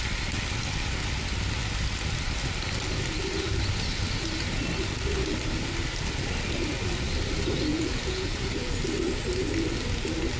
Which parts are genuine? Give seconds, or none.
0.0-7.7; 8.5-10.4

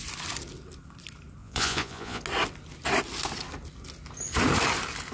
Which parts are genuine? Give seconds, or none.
0.0-1.4; 2.2-5.1

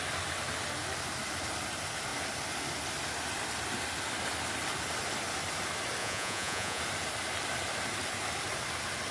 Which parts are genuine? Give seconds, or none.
0.0-6.0; 6.8-9.1

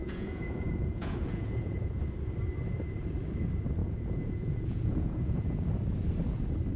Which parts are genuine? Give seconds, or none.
2.0-3.8; 5.6-6.8

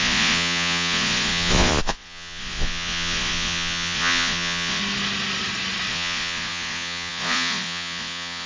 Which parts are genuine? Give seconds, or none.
4.8-5.9